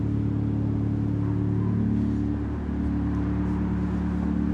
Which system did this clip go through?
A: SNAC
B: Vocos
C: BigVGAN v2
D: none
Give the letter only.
D